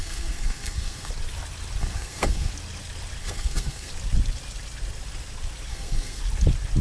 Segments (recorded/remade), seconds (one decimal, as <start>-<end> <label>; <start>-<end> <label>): 0.0-1.1 remade; 1.1-1.8 recorded; 1.8-2.5 remade; 2.5-3.2 recorded; 3.2-3.9 remade; 3.9-5.7 recorded; 5.7-6.2 remade; 6.2-6.8 recorded